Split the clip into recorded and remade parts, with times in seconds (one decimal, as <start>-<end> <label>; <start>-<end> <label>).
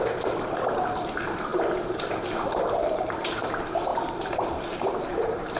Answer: 0.0-5.6 remade